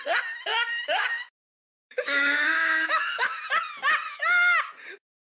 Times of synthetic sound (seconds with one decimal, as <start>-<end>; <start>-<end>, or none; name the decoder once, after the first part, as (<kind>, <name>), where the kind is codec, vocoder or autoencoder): 0.5-3.4 (autoencoder, DAC-VAE)